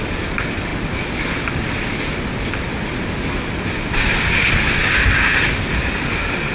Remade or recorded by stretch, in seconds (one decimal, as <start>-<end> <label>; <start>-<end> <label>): 0.0-6.5 recorded

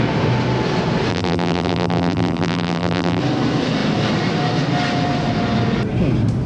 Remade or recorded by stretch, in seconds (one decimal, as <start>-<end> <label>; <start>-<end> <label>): 0.0-1.1 recorded; 1.1-3.2 remade; 3.2-6.5 recorded

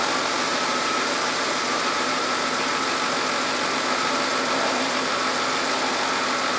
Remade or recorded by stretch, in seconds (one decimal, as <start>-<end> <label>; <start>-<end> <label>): 0.0-0.5 recorded; 0.5-2.6 remade; 2.6-6.6 recorded

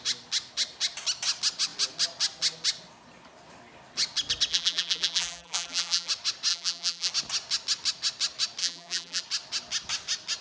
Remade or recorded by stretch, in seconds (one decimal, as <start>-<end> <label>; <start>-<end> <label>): 0.0-4.5 recorded; 4.5-6.1 remade; 6.1-6.5 recorded; 6.5-7.1 remade; 7.1-8.6 recorded; 8.6-9.2 remade; 9.2-10.4 recorded